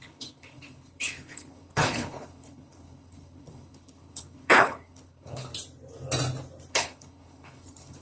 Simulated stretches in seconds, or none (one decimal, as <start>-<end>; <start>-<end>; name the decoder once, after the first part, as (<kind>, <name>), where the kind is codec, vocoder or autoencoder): 0.0-5.5 (codec, HILCodec); 6.7-8.0